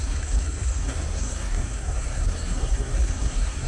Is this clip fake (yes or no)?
yes